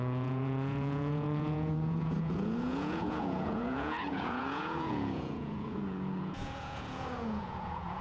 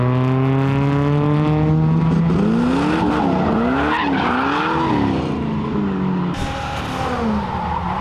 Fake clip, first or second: first